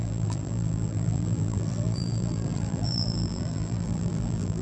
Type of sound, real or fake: fake